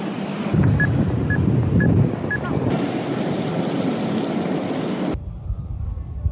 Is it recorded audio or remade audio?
recorded